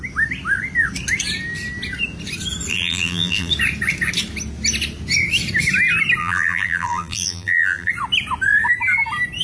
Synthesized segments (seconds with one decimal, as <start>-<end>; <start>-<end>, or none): 2.7-3.5; 6.2-7.9